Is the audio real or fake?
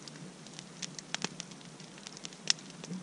real